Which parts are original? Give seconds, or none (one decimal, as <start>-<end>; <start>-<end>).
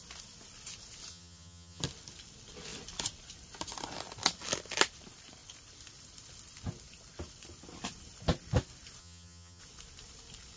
0.0-1.1; 1.8-9.0; 9.6-10.6